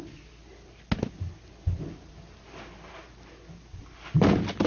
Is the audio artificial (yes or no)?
no